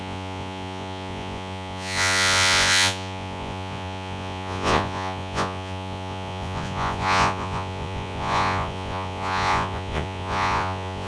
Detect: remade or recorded remade